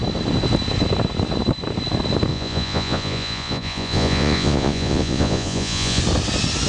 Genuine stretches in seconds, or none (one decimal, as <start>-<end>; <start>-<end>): 0.0-2.3; 6.0-6.7